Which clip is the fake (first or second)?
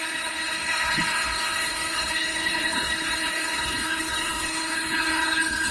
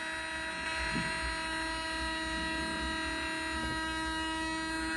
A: first